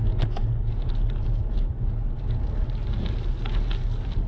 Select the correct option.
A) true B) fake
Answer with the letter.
A